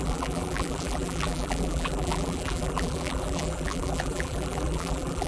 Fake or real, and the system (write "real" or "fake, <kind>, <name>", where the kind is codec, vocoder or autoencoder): fake, vocoder, BigVGAN v2